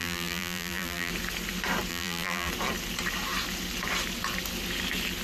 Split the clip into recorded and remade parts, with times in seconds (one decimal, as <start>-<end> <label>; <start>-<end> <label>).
0.0-1.1 remade; 1.1-1.9 recorded; 1.9-2.5 remade; 2.5-5.2 recorded